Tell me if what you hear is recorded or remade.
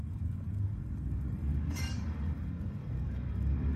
remade